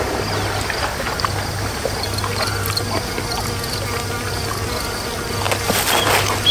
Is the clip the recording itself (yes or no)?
yes